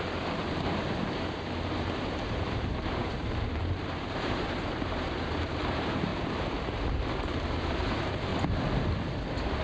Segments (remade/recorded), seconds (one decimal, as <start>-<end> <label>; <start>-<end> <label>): 0.0-8.3 remade; 8.3-9.6 recorded